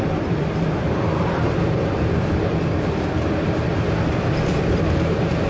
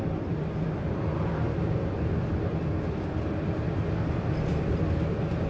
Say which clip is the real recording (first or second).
second